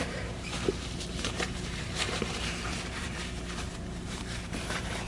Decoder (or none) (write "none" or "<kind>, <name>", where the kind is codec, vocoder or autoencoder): vocoder, BigVGAN v2